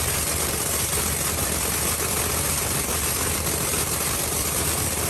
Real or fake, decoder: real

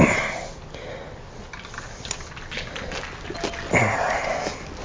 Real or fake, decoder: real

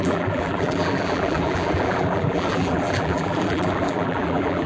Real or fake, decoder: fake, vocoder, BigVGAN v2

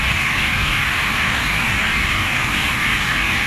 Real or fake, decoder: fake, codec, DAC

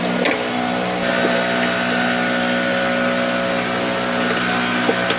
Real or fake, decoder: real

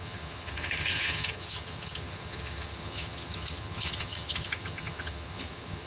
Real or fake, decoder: fake, vocoder, HiFi-GAN